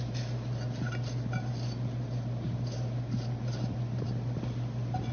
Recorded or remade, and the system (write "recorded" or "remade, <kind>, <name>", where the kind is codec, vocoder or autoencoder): recorded